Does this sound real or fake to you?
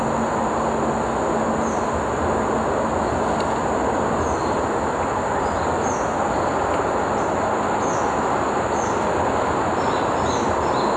real